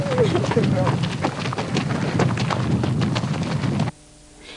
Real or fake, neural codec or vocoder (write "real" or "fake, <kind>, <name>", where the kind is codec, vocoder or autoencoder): real